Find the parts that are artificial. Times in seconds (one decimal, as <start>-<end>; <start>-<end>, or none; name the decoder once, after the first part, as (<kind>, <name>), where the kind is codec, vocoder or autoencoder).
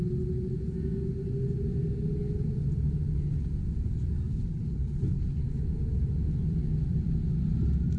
4.3-5.4 (codec, HILCodec)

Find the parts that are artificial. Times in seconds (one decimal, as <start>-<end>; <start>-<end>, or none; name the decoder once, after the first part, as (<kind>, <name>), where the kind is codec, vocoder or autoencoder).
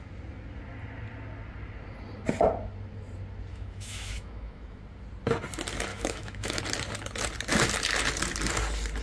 3.5-4.8 (autoencoder, DAC-VAE); 5.9-6.6